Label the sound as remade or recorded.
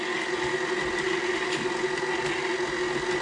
recorded